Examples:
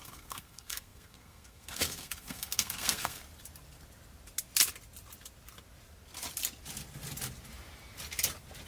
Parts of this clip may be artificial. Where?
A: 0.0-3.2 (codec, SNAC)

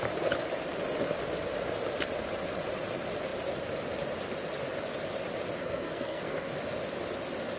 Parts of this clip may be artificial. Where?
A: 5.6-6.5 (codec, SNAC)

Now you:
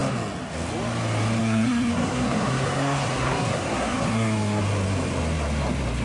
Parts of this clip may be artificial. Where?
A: 1.4-4.6 (codec, SNAC)

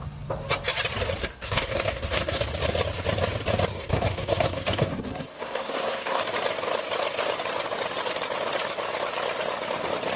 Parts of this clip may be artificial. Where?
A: 1.2-2.4 (codec, SNAC); 3.7-6.2

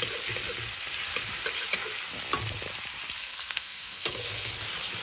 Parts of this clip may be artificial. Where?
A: 3.2-4.5 (codec, SNAC)